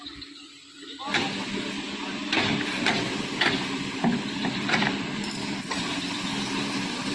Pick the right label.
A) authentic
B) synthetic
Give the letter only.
B